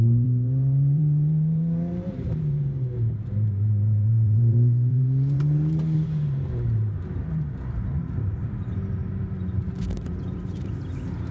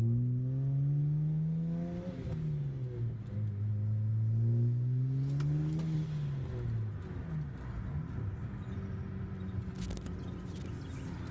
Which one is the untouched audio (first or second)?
second